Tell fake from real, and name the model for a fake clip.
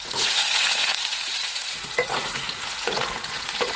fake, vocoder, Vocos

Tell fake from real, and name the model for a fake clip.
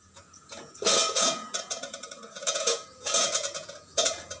fake, vocoder, Vocos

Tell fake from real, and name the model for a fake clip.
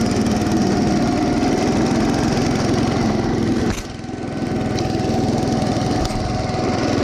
real